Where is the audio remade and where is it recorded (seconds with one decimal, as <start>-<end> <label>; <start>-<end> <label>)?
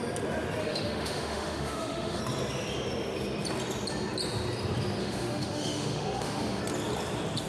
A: 0.0-0.6 recorded; 0.6-2.2 remade; 2.2-5.0 recorded; 5.0-6.6 remade; 6.6-7.5 recorded